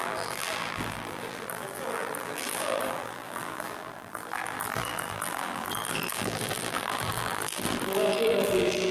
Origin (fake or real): fake